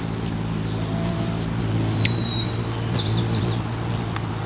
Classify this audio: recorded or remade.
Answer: recorded